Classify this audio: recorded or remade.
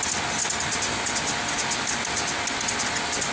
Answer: recorded